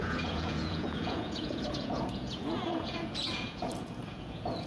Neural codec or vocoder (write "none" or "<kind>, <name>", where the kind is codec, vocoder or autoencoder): vocoder, Vocos